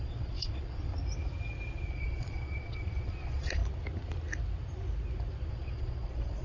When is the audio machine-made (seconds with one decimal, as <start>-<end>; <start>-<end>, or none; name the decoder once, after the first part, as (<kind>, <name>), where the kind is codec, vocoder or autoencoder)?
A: 0.0-0.9 (vocoder, Vocos); 1.9-3.6; 5.5-6.4